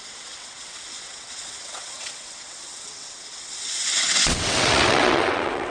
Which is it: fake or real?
fake